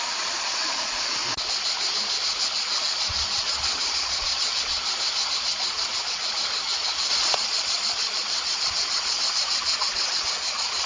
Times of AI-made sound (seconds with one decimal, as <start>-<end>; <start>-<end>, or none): 0.0-1.2; 2.8-10.9

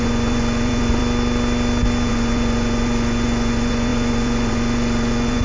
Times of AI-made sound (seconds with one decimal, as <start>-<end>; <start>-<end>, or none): 0.0-1.0; 2.1-5.4

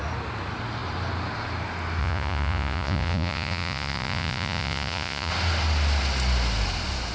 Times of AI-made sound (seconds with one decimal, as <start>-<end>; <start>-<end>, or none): 2.0-5.3

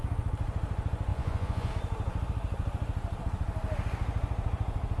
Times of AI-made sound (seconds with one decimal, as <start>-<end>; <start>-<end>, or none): 1.1-1.7

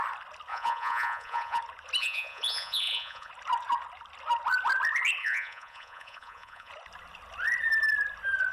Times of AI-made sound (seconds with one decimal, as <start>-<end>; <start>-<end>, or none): 0.5-1.6; 2.0-3.3; 5.2-6.7

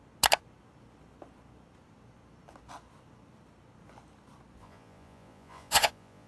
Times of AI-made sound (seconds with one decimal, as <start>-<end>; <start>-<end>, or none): 4.6-6.3

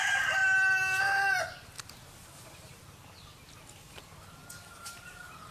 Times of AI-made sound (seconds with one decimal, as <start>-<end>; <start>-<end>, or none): none